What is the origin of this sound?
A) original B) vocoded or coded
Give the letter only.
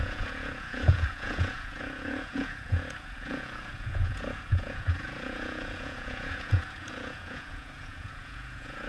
B